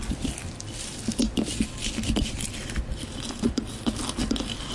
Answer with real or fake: real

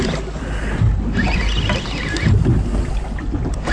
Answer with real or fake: real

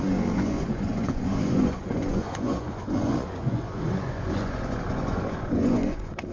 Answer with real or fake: fake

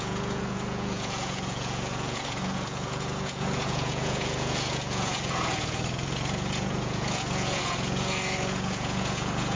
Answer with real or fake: fake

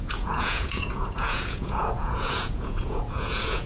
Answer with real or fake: fake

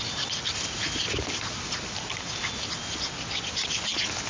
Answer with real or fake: real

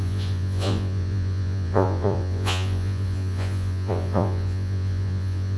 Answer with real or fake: fake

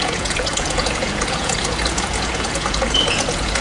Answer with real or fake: fake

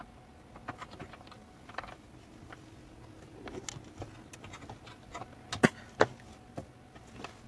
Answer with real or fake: real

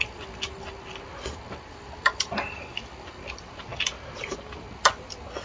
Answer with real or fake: real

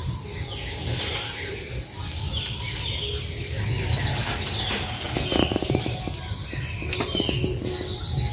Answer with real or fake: real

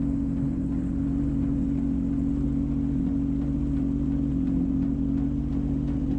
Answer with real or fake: real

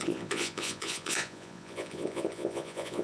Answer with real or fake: fake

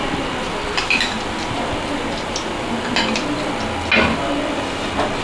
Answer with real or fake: real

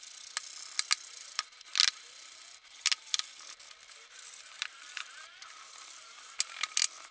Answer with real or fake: real